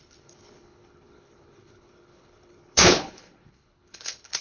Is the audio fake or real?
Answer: fake